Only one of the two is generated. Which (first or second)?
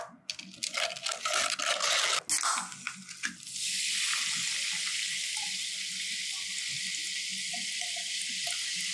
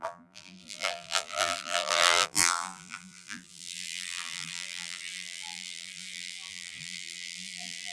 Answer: second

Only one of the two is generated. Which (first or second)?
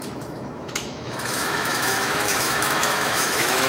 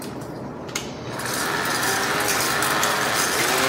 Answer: first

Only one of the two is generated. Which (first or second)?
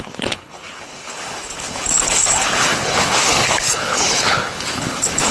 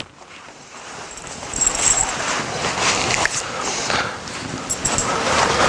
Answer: first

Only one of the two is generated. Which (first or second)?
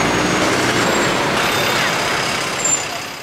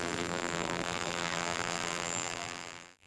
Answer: second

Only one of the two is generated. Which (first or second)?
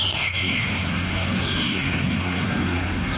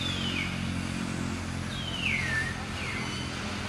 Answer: first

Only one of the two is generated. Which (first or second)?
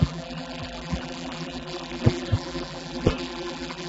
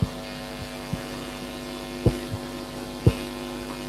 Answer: first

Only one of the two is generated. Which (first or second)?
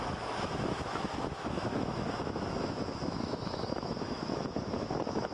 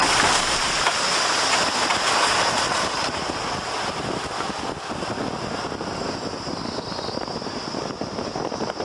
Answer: first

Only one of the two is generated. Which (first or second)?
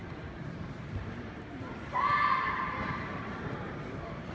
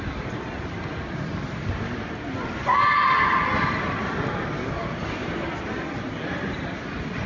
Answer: first